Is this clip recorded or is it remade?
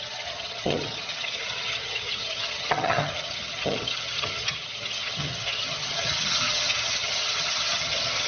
remade